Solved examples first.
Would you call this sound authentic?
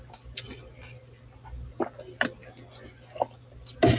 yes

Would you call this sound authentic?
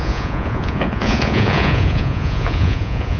no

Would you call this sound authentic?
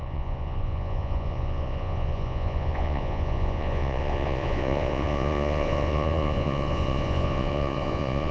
no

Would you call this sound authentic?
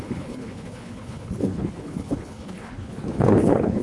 no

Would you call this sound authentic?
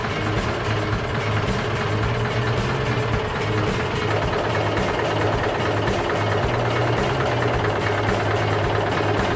yes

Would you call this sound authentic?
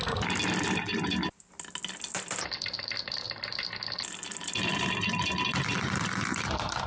yes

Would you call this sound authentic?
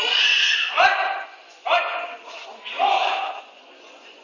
no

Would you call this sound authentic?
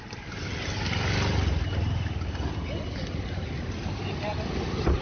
yes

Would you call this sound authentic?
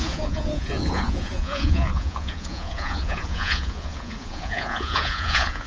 no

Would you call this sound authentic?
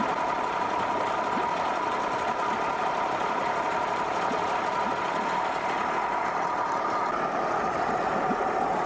yes